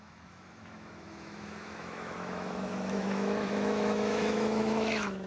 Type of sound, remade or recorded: remade